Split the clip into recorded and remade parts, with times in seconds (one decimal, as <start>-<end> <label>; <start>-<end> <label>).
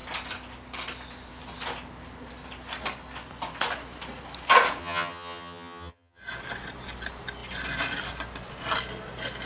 0.0-4.8 recorded; 4.8-6.2 remade; 6.2-9.5 recorded